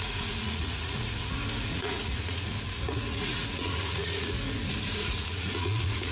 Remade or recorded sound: remade